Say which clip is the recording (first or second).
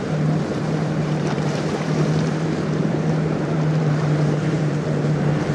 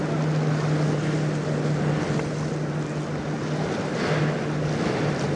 second